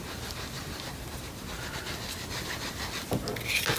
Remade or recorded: recorded